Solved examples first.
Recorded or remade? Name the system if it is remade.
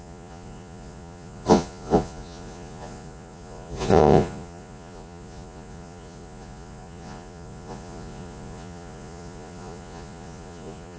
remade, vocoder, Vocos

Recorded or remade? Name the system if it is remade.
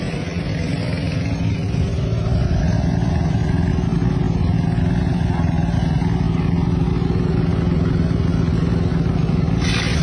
recorded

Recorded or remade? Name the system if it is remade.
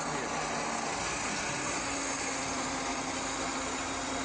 recorded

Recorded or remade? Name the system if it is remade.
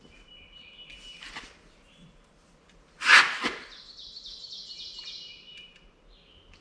recorded